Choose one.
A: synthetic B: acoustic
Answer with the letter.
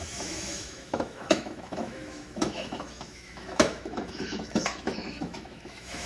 A